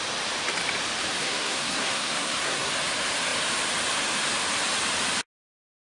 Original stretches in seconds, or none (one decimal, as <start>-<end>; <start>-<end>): 0.0-1.2; 2.7-6.0